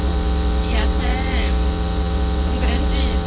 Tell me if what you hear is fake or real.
fake